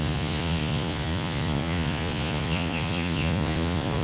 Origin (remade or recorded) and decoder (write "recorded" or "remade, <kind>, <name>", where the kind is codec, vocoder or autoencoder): remade, vocoder, Vocos